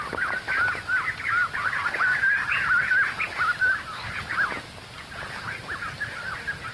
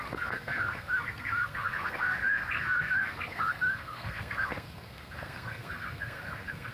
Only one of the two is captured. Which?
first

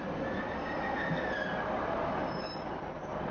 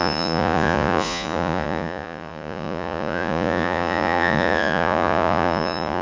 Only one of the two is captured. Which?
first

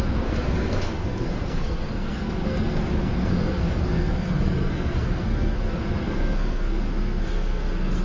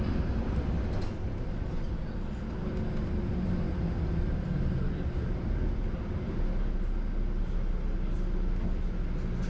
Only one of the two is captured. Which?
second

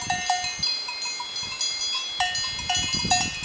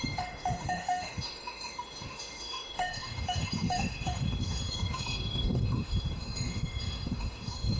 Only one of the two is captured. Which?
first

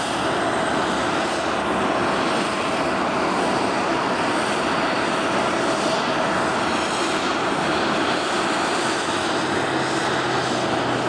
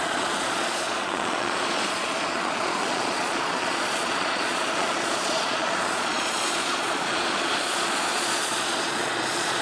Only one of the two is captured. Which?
first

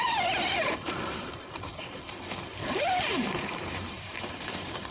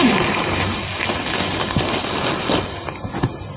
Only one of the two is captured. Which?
second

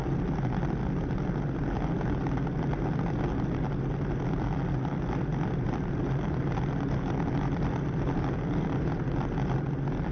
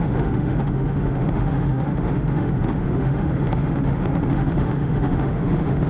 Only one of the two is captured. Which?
first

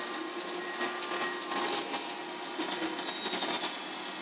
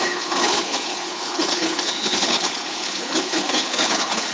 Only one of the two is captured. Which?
first